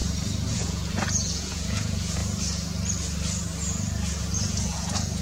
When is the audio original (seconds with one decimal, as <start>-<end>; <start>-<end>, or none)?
0.0-0.5; 2.2-4.5